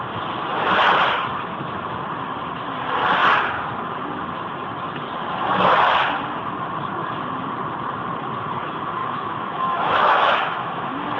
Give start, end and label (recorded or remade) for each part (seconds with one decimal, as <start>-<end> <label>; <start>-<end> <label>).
0.0-9.0 recorded; 9.0-11.2 remade